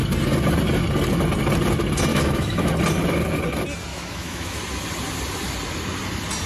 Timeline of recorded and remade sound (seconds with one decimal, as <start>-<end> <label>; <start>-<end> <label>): 0.0-2.1 recorded; 2.1-2.7 remade; 2.7-3.9 recorded; 3.9-4.6 remade; 4.6-6.5 recorded